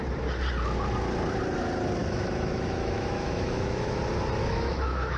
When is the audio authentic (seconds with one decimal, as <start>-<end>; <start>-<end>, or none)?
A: 0.0-2.0; 4.0-4.4